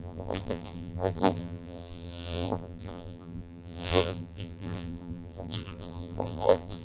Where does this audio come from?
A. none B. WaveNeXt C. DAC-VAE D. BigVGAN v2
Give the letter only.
D